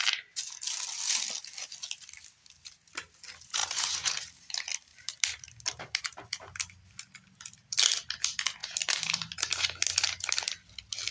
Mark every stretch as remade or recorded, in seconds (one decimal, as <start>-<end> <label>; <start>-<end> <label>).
0.0-3.6 recorded; 3.6-4.4 remade; 4.4-4.9 recorded; 4.9-6.0 remade; 6.0-8.6 recorded; 8.6-9.6 remade; 9.6-11.1 recorded